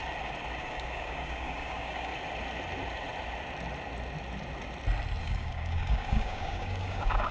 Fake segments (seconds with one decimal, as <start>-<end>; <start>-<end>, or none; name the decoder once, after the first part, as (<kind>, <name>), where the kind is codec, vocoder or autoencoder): 0.6-2.1 (codec, DAC); 5.2-7.3